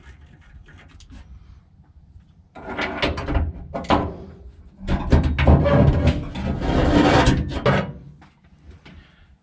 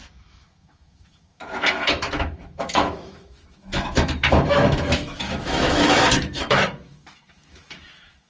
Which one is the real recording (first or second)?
first